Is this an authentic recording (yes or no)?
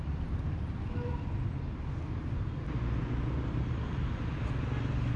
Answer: yes